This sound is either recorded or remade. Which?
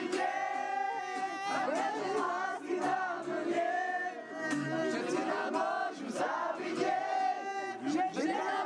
recorded